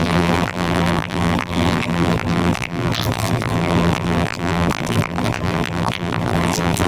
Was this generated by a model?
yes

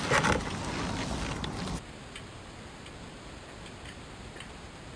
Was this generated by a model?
no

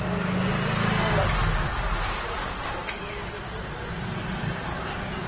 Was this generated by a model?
no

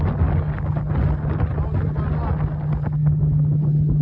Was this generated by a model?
no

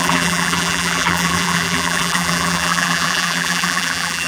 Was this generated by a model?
yes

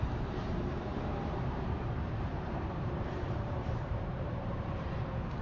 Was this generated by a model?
yes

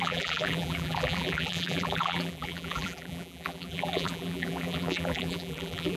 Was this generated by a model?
yes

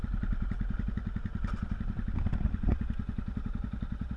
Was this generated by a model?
no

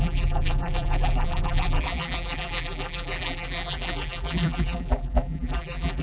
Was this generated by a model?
yes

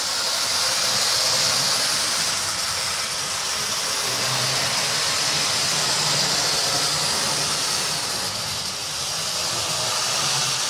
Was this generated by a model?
no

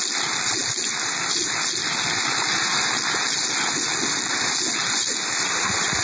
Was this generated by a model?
no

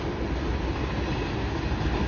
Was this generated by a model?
no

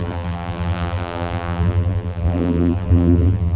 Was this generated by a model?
yes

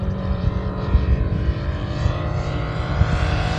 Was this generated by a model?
yes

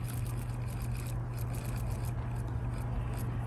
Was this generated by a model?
no